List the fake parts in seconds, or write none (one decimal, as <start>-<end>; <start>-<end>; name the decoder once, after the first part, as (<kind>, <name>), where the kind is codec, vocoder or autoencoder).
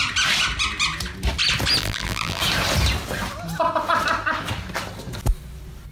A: 1.8-2.4 (vocoder, BigVGAN v2)